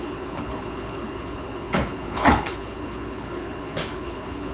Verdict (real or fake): fake